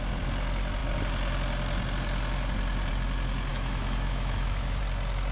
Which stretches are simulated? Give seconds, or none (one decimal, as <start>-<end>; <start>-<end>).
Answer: 3.5-4.8